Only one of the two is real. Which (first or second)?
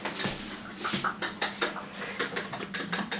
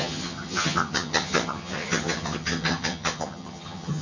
first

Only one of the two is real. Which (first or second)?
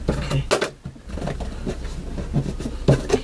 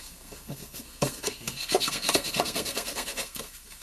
first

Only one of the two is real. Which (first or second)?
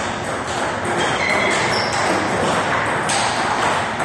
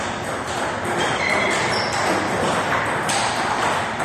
first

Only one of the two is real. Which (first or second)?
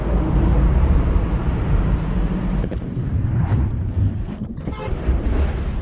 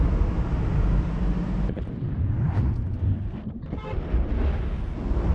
second